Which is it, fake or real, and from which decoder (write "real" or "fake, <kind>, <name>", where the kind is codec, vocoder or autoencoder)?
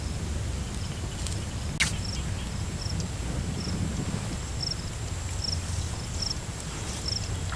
real